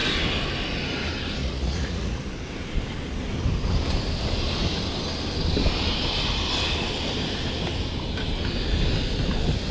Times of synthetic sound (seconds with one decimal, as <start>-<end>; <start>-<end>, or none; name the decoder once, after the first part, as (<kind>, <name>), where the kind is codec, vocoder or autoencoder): 1.4-2.2 (vocoder, Vocos)